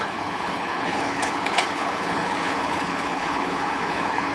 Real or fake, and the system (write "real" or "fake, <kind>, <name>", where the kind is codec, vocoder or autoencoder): fake, codec, HILCodec